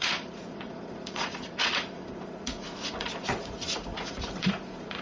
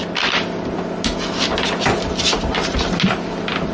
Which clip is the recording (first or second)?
second